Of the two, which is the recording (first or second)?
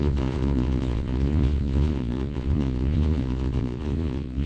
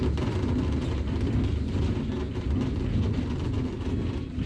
second